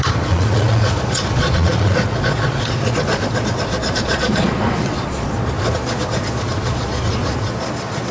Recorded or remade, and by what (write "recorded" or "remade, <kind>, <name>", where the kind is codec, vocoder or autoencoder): remade, vocoder, Vocos